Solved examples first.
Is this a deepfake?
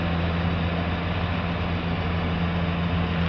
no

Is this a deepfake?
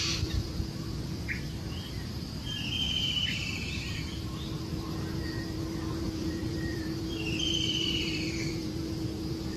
yes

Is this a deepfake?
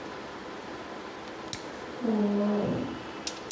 no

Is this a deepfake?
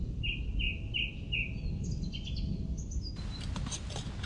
no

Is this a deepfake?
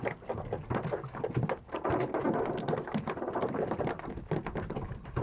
no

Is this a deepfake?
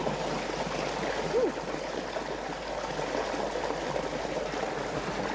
no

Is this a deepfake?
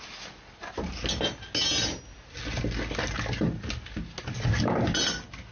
no